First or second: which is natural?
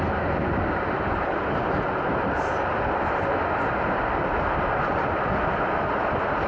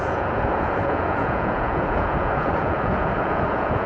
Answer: first